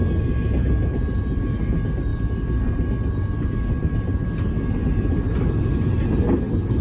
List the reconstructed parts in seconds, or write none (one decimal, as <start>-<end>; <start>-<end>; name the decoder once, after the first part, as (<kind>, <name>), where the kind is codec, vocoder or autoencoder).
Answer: none